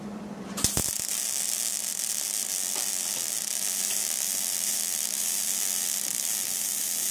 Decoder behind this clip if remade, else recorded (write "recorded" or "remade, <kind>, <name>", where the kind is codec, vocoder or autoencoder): remade, vocoder, BigVGAN v2